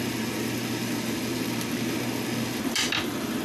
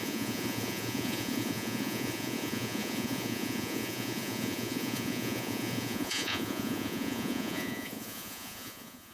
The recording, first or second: first